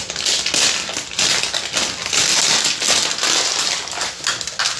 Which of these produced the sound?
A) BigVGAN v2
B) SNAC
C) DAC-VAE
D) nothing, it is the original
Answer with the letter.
D